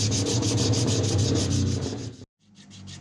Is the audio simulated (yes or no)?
no